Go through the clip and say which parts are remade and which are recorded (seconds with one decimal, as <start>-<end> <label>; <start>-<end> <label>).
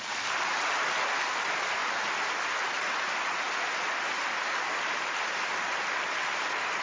0.0-6.8 recorded